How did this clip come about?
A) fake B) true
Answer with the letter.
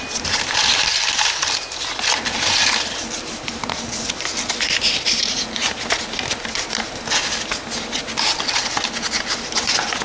B